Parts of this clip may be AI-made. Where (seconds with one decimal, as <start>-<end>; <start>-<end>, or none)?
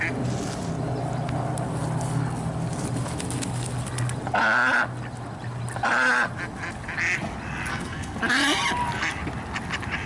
7.7-8.2